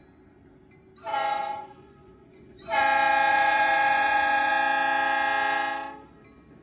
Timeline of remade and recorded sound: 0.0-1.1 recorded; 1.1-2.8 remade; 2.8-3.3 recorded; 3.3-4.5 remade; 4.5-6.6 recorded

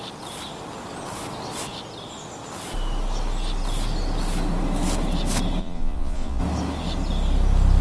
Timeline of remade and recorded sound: 0.0-5.6 recorded; 5.6-6.4 remade; 6.4-7.8 recorded

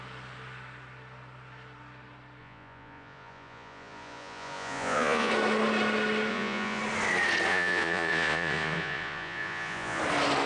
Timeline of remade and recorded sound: 0.0-2.4 recorded; 2.4-5.3 remade; 5.3-6.3 recorded; 6.3-6.8 remade; 6.8-7.5 recorded; 7.5-10.0 remade; 10.0-10.5 recorded

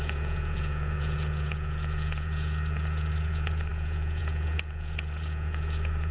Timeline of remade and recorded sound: 0.0-6.1 remade

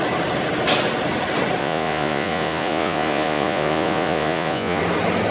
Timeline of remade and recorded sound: 0.0-1.6 recorded; 1.6-4.8 remade; 4.8-5.3 recorded

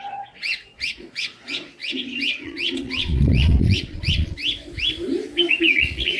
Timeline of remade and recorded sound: 0.0-4.4 remade; 4.4-5.6 recorded; 5.6-6.2 remade

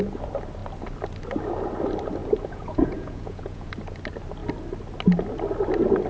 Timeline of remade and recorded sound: 0.0-2.2 recorded; 2.2-3.7 remade; 3.7-6.1 recorded

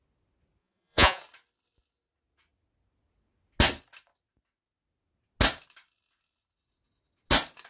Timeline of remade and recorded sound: 0.0-0.6 recorded; 0.6-1.2 remade; 1.2-7.7 recorded